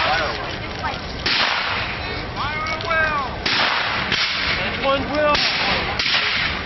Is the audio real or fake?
real